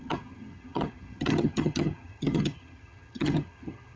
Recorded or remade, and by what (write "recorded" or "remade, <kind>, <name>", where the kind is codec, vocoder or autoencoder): remade, vocoder, HiFi-GAN